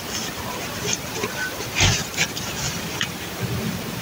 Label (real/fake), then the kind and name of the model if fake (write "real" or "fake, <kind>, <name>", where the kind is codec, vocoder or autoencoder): fake, vocoder, BigVGAN v2